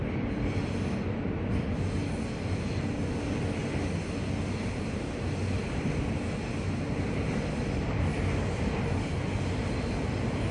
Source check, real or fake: real